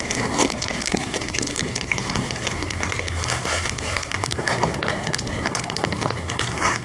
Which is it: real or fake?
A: fake